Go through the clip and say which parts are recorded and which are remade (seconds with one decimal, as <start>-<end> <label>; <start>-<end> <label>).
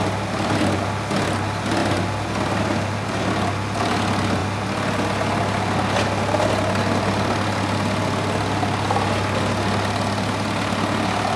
0.0-11.4 recorded